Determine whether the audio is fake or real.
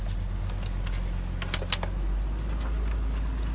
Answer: real